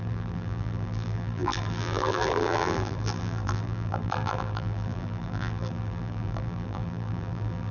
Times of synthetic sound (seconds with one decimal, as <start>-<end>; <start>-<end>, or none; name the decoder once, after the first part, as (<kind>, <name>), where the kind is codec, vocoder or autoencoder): 0.0-7.7 (vocoder, BigVGAN v2)